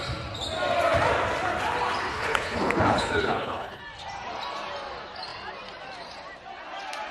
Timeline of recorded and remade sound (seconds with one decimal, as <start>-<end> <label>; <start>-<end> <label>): 0.0-2.1 recorded; 2.1-3.8 remade; 3.8-7.1 recorded